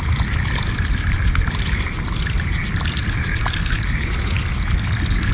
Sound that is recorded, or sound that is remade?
recorded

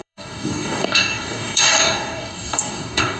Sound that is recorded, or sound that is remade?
remade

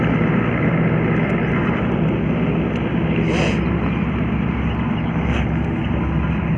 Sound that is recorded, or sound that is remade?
recorded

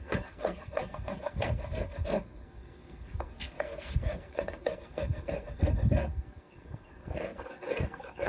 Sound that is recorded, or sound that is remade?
remade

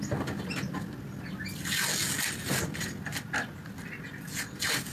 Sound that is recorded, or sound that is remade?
recorded